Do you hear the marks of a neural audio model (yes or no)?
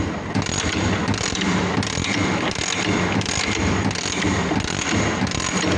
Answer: no